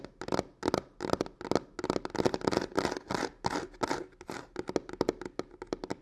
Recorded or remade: recorded